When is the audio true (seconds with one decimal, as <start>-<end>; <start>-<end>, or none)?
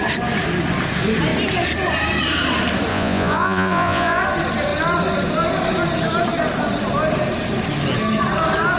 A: 0.0-2.9; 4.2-8.8